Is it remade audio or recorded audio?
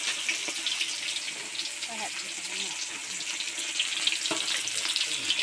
recorded